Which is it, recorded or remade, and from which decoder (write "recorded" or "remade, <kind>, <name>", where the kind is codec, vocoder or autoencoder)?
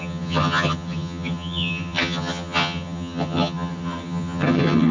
remade, vocoder, HiFi-GAN